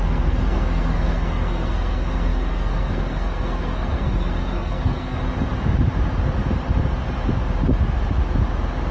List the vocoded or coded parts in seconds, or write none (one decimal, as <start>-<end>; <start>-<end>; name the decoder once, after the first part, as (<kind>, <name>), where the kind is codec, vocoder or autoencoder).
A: 0.0-5.2 (codec, SNAC)